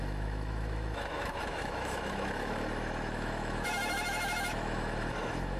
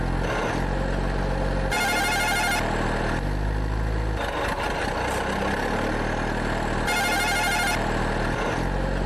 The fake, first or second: first